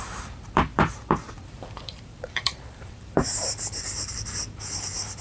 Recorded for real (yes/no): no